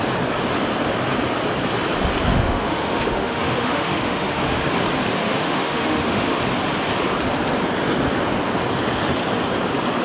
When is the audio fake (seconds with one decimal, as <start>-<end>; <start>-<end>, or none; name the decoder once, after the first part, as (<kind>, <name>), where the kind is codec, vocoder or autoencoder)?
2.3-4.6 (autoencoder, DAC-VAE); 5.2-6.4